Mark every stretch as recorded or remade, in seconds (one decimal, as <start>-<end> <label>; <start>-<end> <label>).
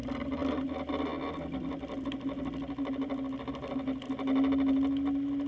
0.0-5.5 recorded